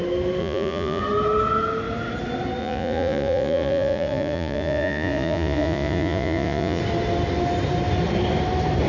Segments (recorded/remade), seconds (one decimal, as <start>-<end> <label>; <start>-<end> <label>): 0.0-0.4 recorded; 0.4-1.0 remade; 1.0-2.6 recorded; 2.6-6.8 remade; 6.8-8.9 recorded